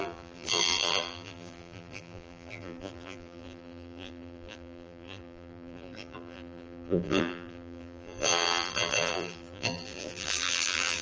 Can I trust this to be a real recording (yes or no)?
no